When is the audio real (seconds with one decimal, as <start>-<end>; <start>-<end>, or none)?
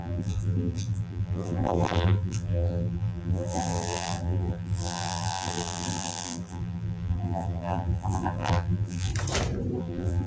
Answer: 9.1-9.8